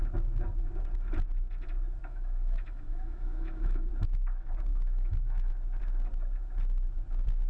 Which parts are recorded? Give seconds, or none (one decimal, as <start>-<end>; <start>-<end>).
0.0-2.0; 3.9-4.7; 5.5-7.5

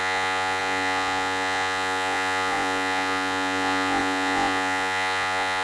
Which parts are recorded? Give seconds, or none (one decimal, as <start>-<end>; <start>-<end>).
none